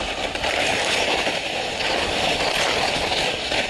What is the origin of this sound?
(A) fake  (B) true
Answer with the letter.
B